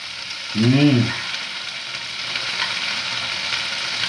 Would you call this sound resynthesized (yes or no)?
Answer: no